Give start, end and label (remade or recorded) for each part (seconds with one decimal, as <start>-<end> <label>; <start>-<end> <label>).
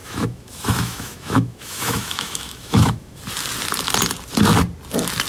0.0-3.2 remade; 3.2-5.3 recorded